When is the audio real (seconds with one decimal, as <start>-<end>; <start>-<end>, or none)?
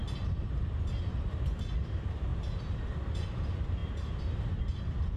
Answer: 0.0-1.4; 2.3-3.0